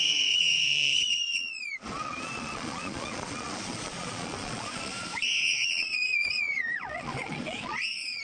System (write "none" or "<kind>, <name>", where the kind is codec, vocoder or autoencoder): vocoder, Vocos